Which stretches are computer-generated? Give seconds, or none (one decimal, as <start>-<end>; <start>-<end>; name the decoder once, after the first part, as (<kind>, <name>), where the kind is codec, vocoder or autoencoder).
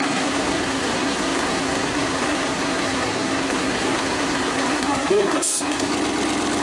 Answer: 0.0-5.9 (codec, SNAC)